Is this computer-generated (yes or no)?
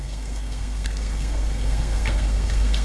yes